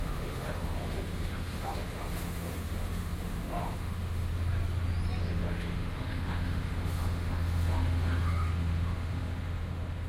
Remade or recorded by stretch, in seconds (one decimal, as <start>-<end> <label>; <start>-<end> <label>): 0.0-4.3 remade; 4.3-5.2 recorded; 5.2-10.1 remade